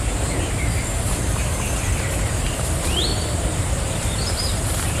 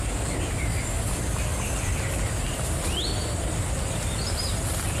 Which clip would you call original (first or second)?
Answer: second